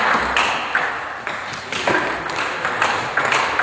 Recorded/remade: recorded